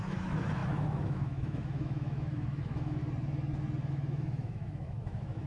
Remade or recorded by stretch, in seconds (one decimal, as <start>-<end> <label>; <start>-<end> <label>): 0.0-3.0 remade; 3.0-3.9 recorded; 3.9-5.5 remade